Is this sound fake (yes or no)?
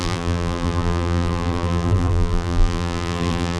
yes